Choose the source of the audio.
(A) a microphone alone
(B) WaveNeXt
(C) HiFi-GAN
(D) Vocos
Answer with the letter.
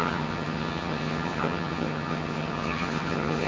C